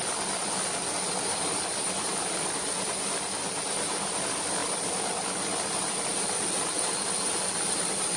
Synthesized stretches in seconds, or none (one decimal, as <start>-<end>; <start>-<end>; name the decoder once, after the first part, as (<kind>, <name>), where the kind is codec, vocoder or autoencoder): none